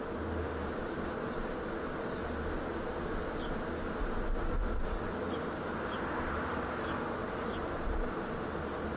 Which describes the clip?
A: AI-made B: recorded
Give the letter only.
B